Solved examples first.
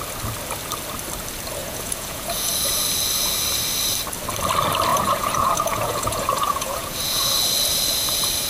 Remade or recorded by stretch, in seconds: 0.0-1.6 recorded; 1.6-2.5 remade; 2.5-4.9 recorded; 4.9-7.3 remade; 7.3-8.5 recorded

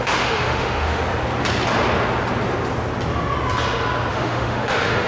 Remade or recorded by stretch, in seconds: 0.0-1.0 remade; 1.0-4.1 recorded; 4.1-5.1 remade

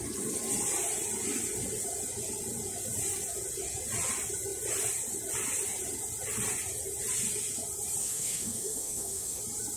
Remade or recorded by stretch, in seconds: 0.0-8.0 recorded; 8.0-9.4 remade; 9.4-9.8 recorded

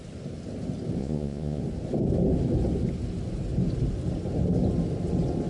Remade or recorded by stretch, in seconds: 0.0-1.0 recorded; 1.0-1.6 remade; 1.6-5.5 recorded